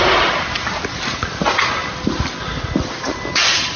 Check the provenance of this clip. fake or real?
real